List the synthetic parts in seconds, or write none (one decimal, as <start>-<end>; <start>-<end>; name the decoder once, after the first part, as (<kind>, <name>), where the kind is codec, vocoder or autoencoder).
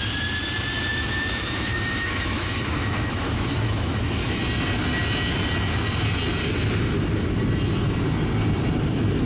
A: 0.9-4.4 (autoencoder, DAC-VAE)